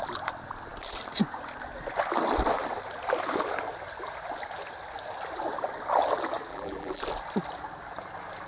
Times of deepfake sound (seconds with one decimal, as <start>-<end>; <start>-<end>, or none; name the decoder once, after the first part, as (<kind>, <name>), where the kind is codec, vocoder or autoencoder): 6.5-7.0 (vocoder, BigVGAN v2)